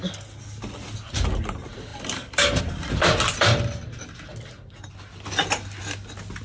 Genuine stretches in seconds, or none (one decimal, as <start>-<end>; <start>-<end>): 0.0-6.4